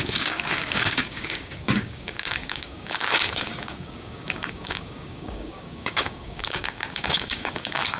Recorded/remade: remade